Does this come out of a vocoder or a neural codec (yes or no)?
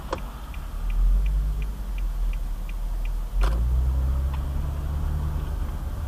no